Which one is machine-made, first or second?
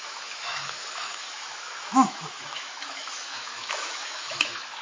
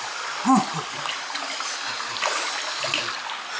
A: first